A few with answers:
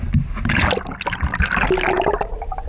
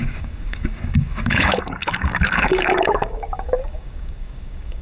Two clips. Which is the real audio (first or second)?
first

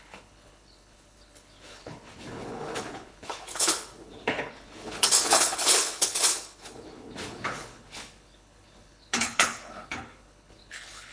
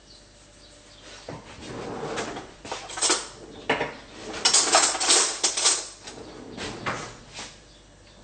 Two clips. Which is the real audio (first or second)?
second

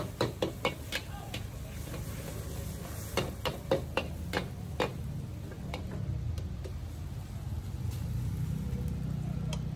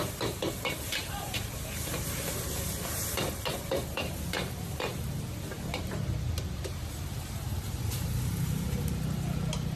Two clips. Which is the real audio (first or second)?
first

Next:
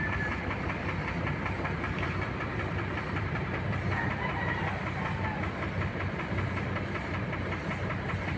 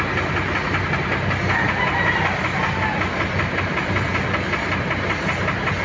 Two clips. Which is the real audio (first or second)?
second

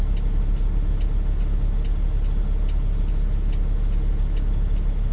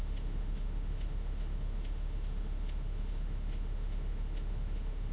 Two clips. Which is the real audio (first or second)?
first